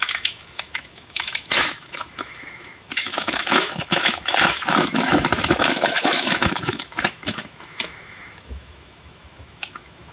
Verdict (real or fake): fake